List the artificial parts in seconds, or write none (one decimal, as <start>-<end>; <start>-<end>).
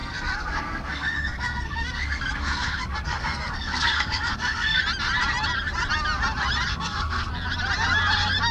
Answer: 0.0-4.8; 6.7-7.3